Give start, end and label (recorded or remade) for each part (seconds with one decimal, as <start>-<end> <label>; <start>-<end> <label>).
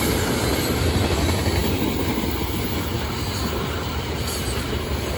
0.0-5.2 recorded